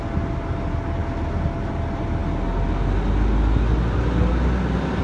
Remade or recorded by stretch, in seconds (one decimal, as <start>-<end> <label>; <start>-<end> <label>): 0.0-5.0 recorded